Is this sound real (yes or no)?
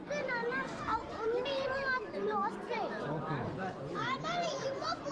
no